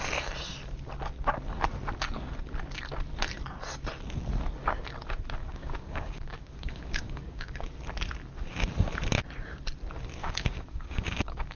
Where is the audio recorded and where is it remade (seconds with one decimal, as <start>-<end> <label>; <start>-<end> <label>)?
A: 0.0-5.4 recorded; 5.4-7.7 remade; 7.7-10.2 recorded; 10.2-11.6 remade